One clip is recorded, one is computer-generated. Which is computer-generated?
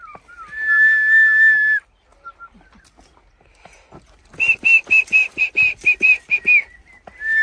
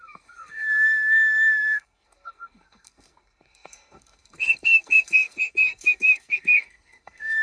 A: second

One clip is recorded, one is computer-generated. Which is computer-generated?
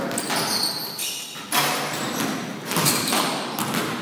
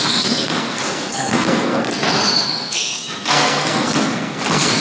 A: second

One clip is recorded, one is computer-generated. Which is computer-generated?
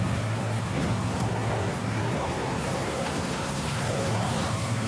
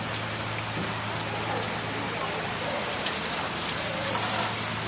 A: first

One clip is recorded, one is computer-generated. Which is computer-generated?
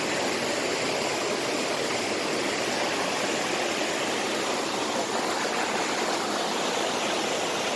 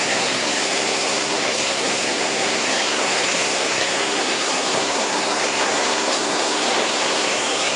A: second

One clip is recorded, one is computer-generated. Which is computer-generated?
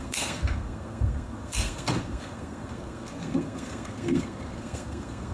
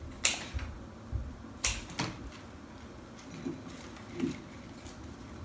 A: first